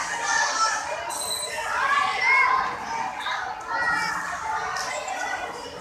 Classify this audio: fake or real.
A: real